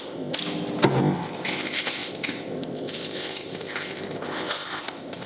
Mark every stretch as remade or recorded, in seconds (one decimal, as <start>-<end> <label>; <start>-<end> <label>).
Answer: 0.0-0.4 remade; 0.4-1.0 recorded; 1.0-5.3 remade